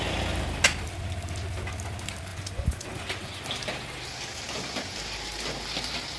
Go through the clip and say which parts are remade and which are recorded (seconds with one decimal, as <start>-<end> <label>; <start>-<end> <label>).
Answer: 0.0-2.3 recorded; 2.3-3.4 remade; 3.4-6.2 recorded